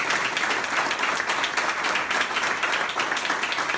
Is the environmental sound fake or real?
real